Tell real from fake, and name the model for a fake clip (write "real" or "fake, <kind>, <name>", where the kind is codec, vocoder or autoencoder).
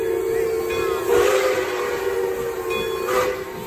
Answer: real